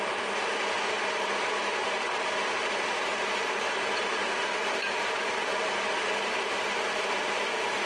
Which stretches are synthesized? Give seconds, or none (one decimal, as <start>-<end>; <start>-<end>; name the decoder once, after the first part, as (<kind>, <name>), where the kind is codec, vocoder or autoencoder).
4.6-5.4 (vocoder, BigVGAN v2)